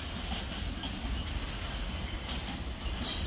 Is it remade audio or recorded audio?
recorded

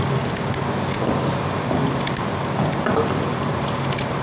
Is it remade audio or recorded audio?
recorded